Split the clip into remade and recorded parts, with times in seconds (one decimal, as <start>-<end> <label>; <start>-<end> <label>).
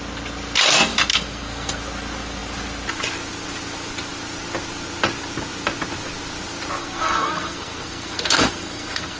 0.0-1.1 recorded; 1.1-1.8 remade; 1.8-6.8 recorded; 6.8-9.2 remade